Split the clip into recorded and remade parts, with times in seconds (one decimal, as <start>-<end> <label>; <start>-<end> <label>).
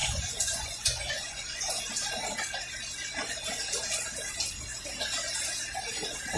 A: 0.0-1.8 remade; 1.8-6.4 recorded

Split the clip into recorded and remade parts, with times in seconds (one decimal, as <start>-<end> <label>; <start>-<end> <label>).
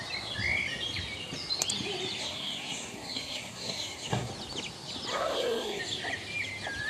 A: 0.0-2.2 recorded; 2.2-4.3 remade; 4.3-5.1 recorded; 5.1-5.8 remade; 5.8-6.9 recorded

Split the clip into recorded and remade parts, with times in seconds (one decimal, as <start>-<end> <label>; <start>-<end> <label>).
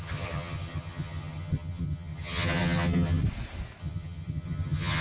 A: 0.0-3.2 remade; 3.2-3.8 recorded; 3.8-5.0 remade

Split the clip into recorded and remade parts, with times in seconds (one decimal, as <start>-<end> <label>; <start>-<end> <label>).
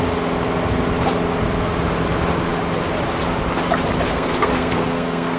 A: 0.0-4.1 recorded; 4.1-5.4 remade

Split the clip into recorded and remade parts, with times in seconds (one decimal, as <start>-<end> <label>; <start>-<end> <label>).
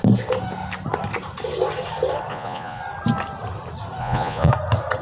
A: 0.0-2.3 recorded; 2.3-2.8 remade; 2.8-4.0 recorded; 4.0-4.5 remade; 4.5-5.0 recorded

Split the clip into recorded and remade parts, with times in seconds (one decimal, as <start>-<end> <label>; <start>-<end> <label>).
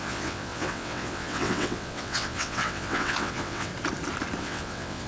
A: 0.0-3.7 remade; 3.7-4.4 recorded; 4.4-5.1 remade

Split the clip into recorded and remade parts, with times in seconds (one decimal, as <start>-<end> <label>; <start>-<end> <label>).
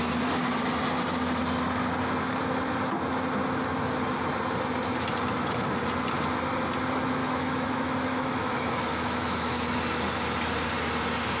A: 0.0-7.2 recorded; 7.2-9.8 remade; 9.8-11.4 recorded